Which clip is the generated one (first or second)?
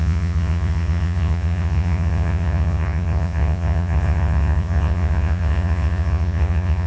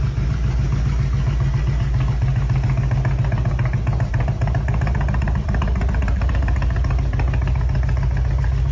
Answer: first